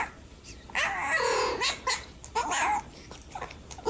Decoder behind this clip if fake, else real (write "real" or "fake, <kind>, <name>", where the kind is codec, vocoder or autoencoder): real